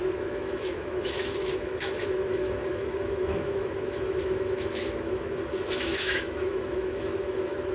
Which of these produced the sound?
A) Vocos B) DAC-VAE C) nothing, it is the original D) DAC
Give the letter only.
B